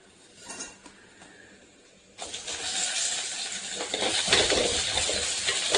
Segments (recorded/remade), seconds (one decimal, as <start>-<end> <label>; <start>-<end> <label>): 0.0-5.8 recorded